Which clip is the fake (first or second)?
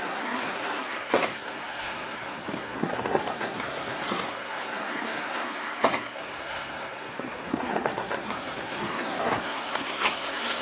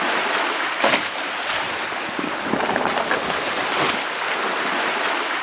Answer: first